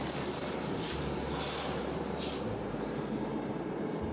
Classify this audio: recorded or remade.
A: remade